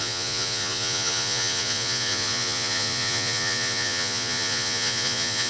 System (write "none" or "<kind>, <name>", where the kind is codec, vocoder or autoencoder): vocoder, Vocos